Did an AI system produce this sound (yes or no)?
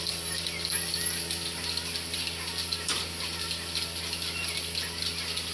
no